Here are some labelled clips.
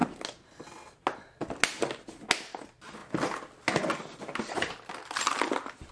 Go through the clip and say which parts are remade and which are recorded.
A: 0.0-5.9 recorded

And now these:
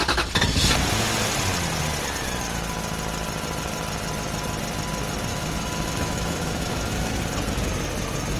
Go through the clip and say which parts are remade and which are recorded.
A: 0.0-5.3 recorded; 5.3-7.2 remade; 7.2-8.4 recorded

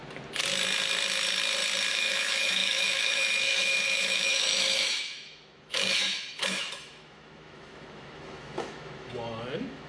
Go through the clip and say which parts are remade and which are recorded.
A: 0.0-1.9 recorded; 1.9-9.9 remade

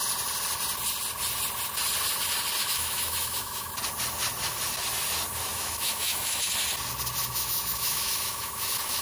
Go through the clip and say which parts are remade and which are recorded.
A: 0.0-2.6 recorded; 2.6-3.7 remade; 3.7-5.5 recorded; 5.5-6.5 remade; 6.5-7.2 recorded; 7.2-9.0 remade

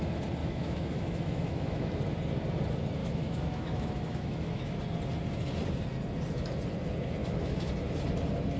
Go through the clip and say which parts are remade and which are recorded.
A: 0.0-0.4 recorded; 0.4-1.9 remade; 1.9-3.0 recorded; 3.0-4.8 remade; 4.8-7.2 recorded; 7.2-7.7 remade; 7.7-8.6 recorded

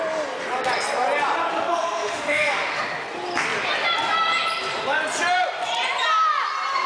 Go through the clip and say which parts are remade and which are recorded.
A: 0.0-1.5 recorded; 1.5-2.8 remade; 2.8-6.9 recorded

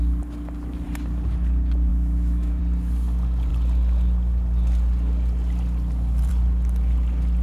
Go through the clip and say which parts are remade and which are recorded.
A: 0.0-1.9 recorded; 1.9-2.6 remade; 2.6-7.4 recorded